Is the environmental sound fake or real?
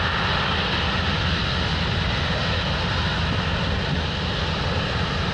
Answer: real